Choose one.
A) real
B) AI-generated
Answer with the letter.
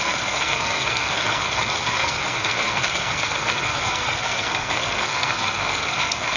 B